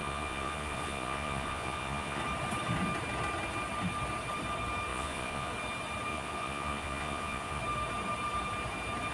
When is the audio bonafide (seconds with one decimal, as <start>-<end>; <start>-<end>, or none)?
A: 2.2-4.9; 5.5-6.1; 7.6-9.1